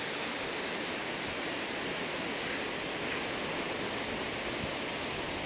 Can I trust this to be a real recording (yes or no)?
yes